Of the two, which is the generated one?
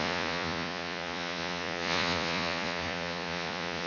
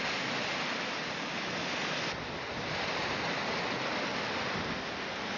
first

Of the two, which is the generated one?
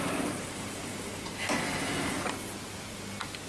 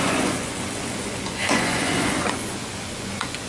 second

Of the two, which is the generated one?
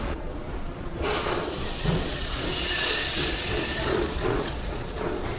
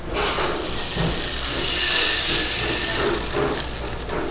first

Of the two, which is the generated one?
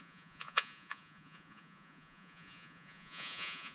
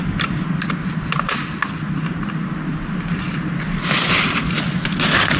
first